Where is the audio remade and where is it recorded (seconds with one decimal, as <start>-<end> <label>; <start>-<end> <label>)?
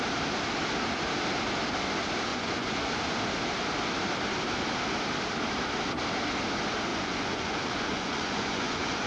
0.0-2.3 recorded; 2.3-2.9 remade; 2.9-6.9 recorded; 6.9-9.1 remade